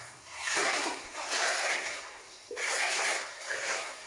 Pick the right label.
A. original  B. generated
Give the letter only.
B